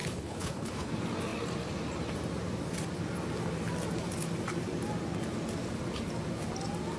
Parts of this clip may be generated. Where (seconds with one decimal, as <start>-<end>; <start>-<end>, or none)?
0.0-0.9